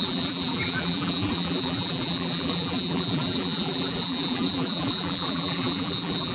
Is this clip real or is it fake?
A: fake